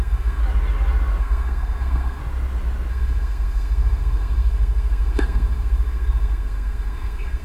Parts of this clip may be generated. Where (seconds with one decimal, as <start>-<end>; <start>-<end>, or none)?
0.0-0.4; 1.2-2.2; 2.9-7.4